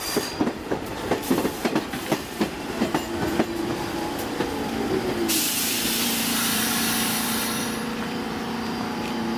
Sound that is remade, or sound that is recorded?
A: remade